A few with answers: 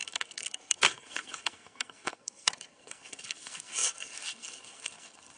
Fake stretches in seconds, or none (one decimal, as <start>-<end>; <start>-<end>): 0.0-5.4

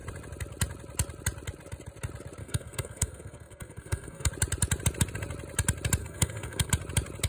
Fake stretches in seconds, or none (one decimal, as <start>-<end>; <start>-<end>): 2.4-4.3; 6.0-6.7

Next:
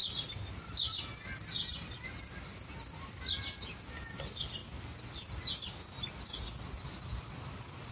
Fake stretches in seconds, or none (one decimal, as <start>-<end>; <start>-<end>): none